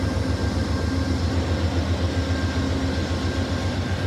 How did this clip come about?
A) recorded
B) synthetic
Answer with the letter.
A